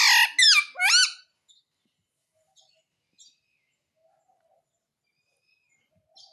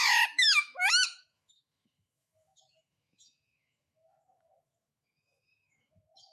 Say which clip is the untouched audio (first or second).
first